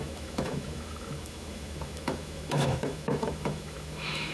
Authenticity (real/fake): fake